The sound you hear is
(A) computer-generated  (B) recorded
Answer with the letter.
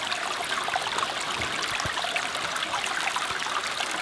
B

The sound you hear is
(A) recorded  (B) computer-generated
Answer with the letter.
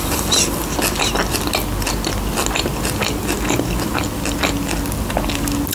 A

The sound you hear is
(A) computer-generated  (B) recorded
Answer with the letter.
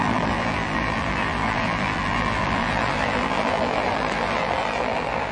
A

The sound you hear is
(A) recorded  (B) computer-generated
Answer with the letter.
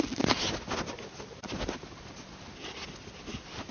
A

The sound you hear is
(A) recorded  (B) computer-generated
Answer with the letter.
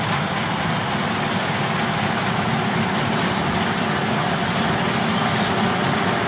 A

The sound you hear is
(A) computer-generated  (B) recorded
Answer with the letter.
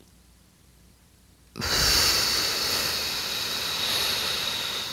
B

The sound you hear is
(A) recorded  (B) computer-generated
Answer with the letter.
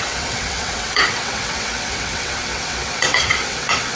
B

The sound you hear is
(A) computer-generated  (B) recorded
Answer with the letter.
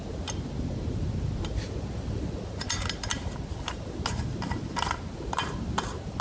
B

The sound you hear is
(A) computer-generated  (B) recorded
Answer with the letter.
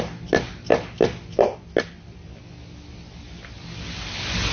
B